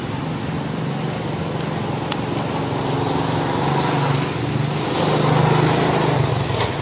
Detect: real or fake real